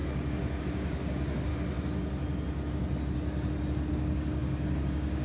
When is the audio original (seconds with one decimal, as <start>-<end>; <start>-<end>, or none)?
0.0-0.6; 1.5-3.9